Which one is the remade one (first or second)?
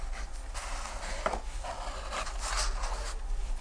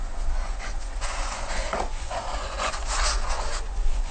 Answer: second